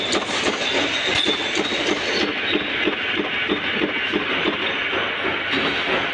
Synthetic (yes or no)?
no